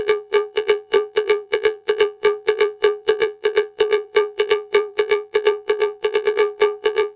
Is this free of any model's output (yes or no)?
no